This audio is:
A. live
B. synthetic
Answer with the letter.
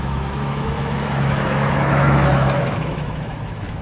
B